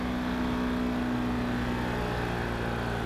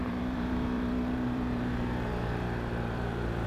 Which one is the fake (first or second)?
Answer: second